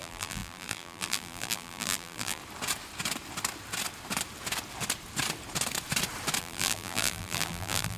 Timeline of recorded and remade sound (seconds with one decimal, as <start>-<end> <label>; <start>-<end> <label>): 0.0-2.4 remade; 2.4-6.4 recorded; 6.4-8.0 remade